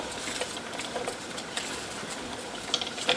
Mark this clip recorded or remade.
recorded